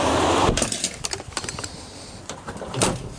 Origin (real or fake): fake